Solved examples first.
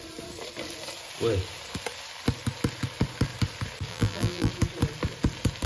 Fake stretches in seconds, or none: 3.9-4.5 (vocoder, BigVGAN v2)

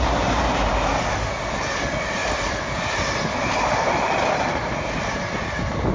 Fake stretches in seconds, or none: none

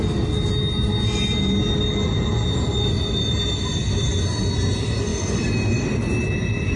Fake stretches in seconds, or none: none

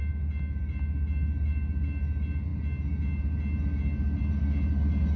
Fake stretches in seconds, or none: none

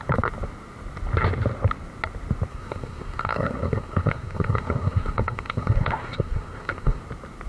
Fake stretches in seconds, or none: 2.5-7.0 (codec, SNAC)

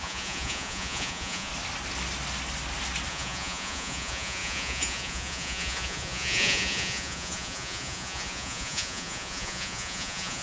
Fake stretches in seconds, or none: 0.0-1.5 (vocoder, Vocos); 3.1-10.4